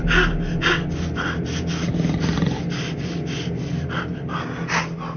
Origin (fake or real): real